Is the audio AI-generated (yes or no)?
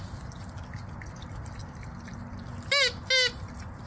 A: no